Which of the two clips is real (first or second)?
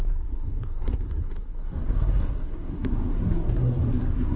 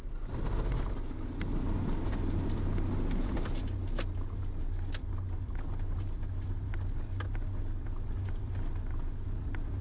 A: second